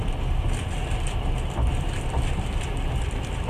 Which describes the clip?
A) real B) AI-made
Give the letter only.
B